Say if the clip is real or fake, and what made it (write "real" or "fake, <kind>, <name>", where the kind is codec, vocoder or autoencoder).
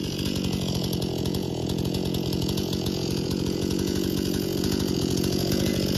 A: fake, vocoder, Vocos